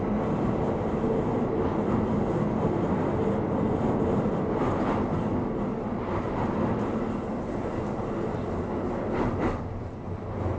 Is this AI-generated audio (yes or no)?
no